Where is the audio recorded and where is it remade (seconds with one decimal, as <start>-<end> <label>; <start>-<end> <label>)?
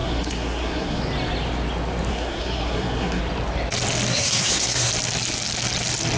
0.0-1.0 remade; 1.0-2.1 recorded; 2.1-3.2 remade; 3.2-4.1 recorded; 4.1-4.9 remade; 4.9-6.2 recorded